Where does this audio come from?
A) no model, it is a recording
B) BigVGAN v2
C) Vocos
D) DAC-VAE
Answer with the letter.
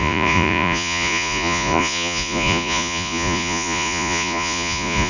C